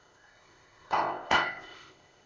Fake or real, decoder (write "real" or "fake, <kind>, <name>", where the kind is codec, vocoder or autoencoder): fake, codec, ZipCodec